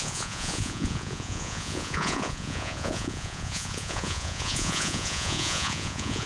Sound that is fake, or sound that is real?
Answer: fake